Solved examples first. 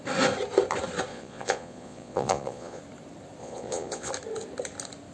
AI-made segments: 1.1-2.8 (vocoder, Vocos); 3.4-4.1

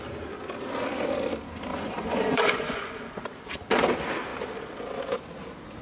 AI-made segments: 1.7-3.2 (vocoder, Vocos)

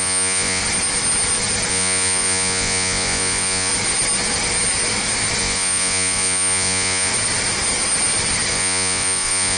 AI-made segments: 0.0-0.6 (vocoder, Vocos); 1.7-3.7; 5.4-7.1; 8.5-9.6

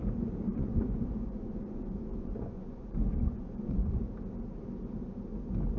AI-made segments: 0.5-4.0 (vocoder, Vocos)

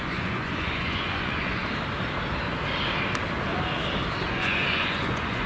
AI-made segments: 0.0-1.6 (vocoder, Vocos); 4.3-5.5

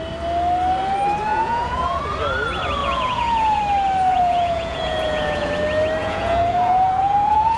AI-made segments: 1.3-2.0 (vocoder, Vocos); 2.8-3.6; 4.1-5.5; 6.0-7.6

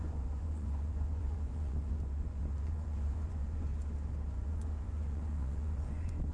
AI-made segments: 0.0-3.7 (vocoder, Vocos); 4.3-6.3